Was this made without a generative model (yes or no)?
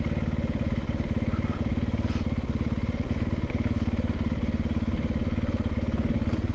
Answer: yes